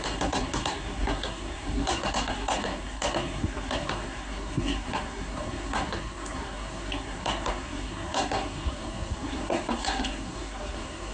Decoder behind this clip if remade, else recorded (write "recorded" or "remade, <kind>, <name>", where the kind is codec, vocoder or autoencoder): remade, codec, SNAC